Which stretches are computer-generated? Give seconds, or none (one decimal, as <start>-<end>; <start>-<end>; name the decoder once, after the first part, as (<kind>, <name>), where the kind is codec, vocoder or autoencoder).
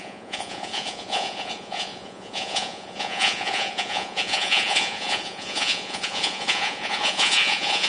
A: 0.0-7.9 (vocoder, Vocos)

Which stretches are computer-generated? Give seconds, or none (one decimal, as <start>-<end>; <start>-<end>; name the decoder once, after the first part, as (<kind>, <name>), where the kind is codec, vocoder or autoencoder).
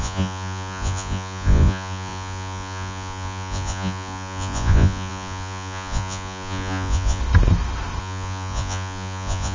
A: 0.0-7.2 (vocoder, Vocos); 8.0-9.5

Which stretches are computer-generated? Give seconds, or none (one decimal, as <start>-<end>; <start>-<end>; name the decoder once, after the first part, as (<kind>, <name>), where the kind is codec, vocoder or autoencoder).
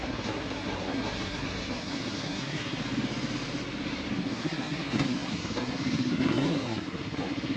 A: 0.0-2.8 (codec, SNAC); 4.1-7.6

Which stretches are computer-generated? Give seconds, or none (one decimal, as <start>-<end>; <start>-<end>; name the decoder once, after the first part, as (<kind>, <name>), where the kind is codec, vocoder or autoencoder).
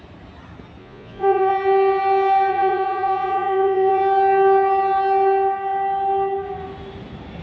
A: 0.8-1.5 (vocoder, Vocos); 2.5-4.0